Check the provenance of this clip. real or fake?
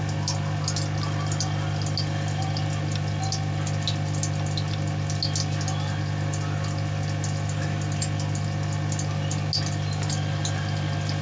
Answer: real